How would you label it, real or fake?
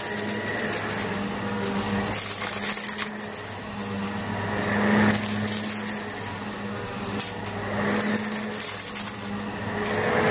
real